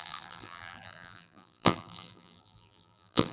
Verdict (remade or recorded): remade